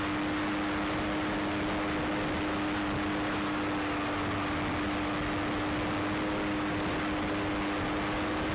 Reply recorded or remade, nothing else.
recorded